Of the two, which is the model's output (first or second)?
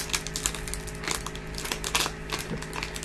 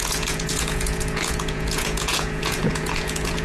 second